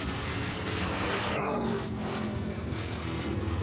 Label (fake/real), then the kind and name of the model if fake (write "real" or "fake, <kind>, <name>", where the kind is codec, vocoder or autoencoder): fake, codec, SNAC